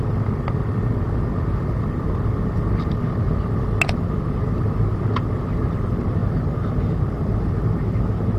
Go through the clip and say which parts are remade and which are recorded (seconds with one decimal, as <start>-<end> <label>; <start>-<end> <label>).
0.0-8.4 recorded